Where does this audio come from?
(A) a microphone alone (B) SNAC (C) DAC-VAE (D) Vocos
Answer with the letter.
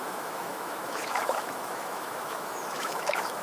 C